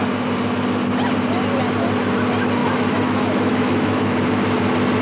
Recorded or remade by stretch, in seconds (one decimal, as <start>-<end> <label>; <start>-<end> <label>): 0.0-2.6 recorded; 2.6-4.3 remade; 4.3-5.0 recorded